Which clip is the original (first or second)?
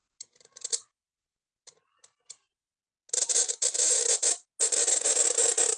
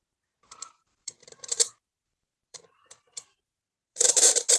first